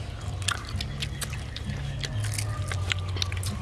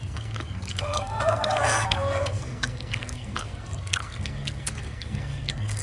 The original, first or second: first